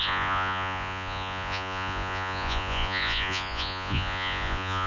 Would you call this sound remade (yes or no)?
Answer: yes